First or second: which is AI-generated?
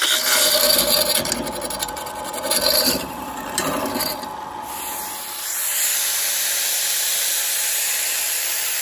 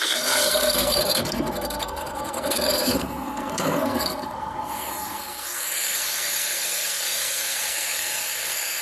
second